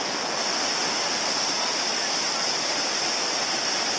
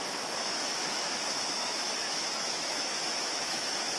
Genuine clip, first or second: first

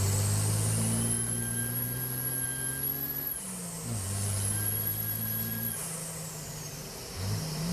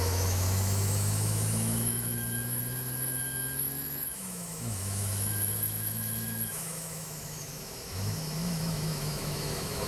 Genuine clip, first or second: first